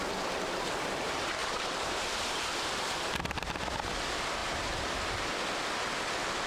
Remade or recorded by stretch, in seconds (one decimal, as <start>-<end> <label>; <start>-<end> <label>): 0.0-1.4 recorded; 1.4-3.1 remade; 3.1-4.4 recorded; 4.4-5.2 remade; 5.2-6.5 recorded